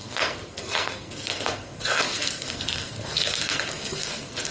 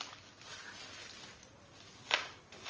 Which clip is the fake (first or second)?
first